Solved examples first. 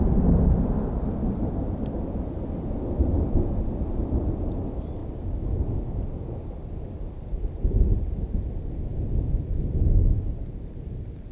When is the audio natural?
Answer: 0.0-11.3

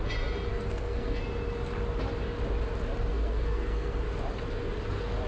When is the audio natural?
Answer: 0.0-0.5; 1.2-3.1; 4.0-5.3